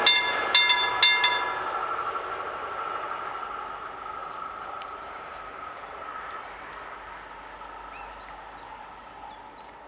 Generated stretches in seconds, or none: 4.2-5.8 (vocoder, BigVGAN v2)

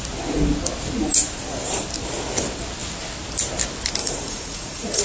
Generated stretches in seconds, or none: 4.0-5.0 (vocoder, Vocos)

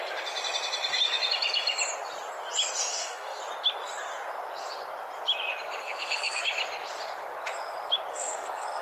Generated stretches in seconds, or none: 2.9-3.4 (codec, SNAC); 5.8-6.4; 8.1-8.8

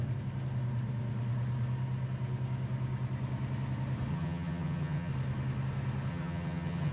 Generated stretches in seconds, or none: 4.1-5.1 (vocoder, HiFi-GAN); 6.1-6.9

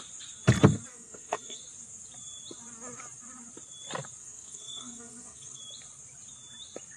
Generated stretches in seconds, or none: 0.9-1.6 (codec, SNAC); 4.2-5.6